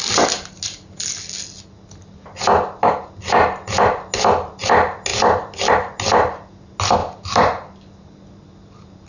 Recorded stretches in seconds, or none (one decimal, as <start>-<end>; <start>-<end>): 0.0-9.1